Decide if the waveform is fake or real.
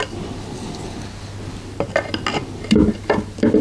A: real